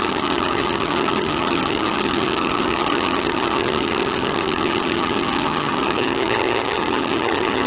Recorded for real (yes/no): no